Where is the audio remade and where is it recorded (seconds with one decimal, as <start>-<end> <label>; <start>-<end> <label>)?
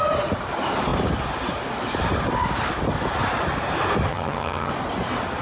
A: 0.0-4.1 recorded; 4.1-4.7 remade; 4.7-5.4 recorded